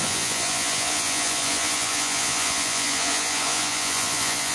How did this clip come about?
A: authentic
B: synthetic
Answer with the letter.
B